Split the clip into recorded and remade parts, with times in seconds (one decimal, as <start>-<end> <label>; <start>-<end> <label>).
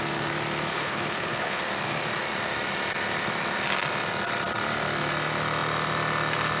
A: 0.0-0.7 recorded; 0.7-1.6 remade; 1.6-6.6 recorded